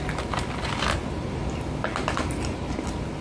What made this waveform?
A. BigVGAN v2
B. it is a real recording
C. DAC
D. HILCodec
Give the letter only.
B